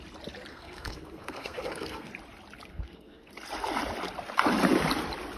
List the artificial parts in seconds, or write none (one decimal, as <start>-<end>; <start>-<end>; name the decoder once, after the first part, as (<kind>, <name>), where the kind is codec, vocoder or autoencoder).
0.5-2.1 (codec, SNAC); 2.7-3.3